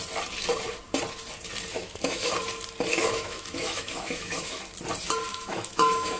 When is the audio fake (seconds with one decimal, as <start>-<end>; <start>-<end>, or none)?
1.7-2.3; 2.9-4.6; 5.3-6.2